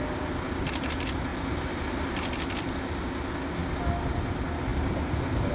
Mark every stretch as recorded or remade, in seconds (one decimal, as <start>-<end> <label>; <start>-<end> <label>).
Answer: 0.0-1.3 recorded; 1.3-2.7 remade; 2.7-4.7 recorded; 4.7-5.5 remade